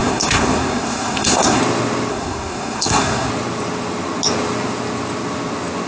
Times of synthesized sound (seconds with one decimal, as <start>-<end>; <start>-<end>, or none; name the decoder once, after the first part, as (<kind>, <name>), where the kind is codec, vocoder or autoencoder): 0.0-1.6 (codec, SNAC); 2.1-3.3